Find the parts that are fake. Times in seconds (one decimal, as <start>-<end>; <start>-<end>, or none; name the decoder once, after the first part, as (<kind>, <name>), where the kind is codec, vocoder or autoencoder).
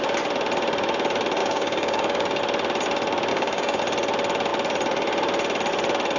1.4-2.4 (codec, DAC); 3.3-3.8